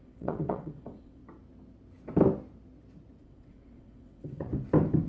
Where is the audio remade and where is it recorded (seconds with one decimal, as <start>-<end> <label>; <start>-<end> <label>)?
0.0-1.2 remade; 1.2-3.2 recorded; 3.2-4.5 remade; 4.5-5.1 recorded